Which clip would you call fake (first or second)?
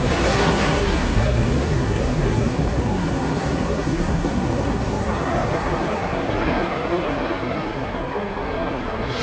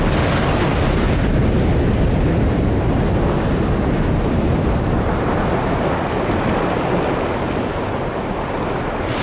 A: first